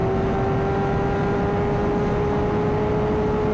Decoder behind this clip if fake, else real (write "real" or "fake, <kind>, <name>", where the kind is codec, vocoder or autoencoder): real